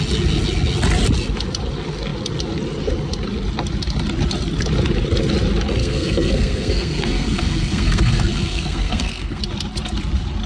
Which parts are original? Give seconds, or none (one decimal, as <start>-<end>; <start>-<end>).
0.0-5.8; 9.4-10.5